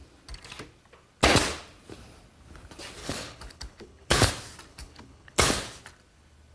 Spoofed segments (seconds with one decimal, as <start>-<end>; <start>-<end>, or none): 3.0-4.3; 4.7-5.5